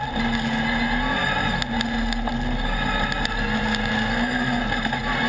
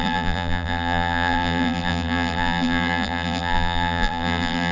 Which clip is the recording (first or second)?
first